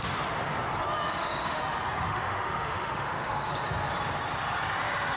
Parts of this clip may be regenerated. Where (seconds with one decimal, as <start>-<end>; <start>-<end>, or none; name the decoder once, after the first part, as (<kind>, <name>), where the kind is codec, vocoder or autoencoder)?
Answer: 1.1-1.6 (autoencoder, DAC-VAE); 2.1-3.5